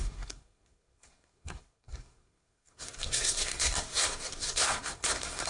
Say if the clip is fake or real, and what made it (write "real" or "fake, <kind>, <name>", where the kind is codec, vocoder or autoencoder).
fake, codec, SNAC